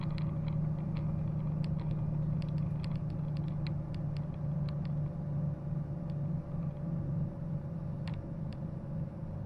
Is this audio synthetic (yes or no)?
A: no